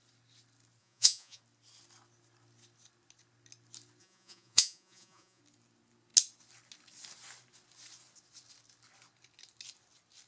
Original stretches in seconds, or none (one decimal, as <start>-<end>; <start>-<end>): 0.0-0.8; 1.4-4.0; 5.4-10.3